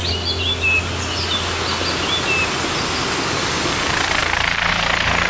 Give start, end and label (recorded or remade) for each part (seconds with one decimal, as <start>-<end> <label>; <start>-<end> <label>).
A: 0.0-5.3 recorded

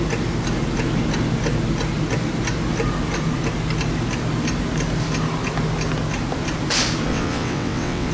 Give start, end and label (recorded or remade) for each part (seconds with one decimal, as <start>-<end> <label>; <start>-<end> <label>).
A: 0.0-7.1 recorded; 7.1-8.1 remade